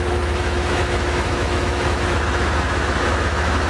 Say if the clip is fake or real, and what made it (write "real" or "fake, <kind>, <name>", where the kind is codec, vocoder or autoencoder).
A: fake, autoencoder, DAC-VAE